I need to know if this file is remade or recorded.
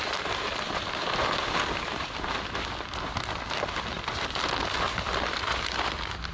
remade